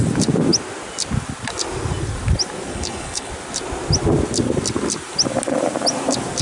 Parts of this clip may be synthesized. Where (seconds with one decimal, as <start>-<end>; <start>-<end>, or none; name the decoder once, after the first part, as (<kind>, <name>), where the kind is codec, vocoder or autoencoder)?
2.7-3.3 (codec, HILCodec)